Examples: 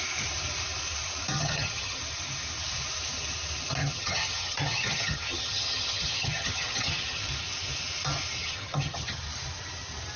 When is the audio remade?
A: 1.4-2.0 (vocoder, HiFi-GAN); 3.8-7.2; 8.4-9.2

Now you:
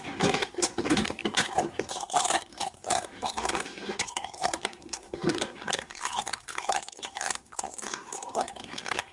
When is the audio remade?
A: 0.0-9.1 (codec, SNAC)

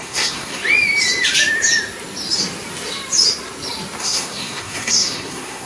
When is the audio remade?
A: 0.0-0.6 (codec, SNAC); 4.0-5.7

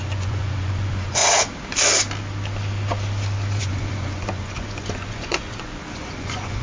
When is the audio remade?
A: 0.0-1.2 (vocoder, Vocos); 3.6-6.6

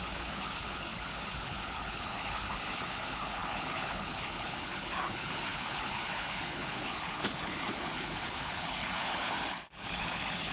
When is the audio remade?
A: 0.0-10.5 (codec, HILCodec)

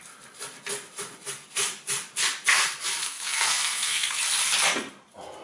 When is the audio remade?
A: 3.0-4.2 (codec, SNAC)